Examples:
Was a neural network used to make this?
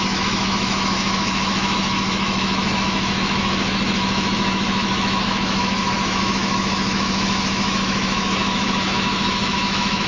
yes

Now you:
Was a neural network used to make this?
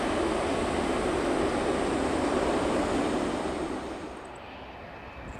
no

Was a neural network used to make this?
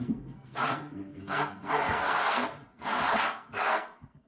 yes